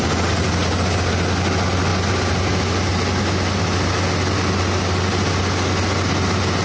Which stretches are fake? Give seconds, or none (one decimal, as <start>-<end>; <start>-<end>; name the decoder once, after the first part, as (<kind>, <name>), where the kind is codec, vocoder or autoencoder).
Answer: none